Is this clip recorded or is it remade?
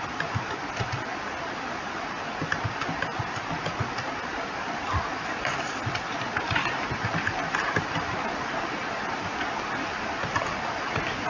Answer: recorded